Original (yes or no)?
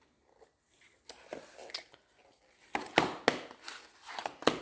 yes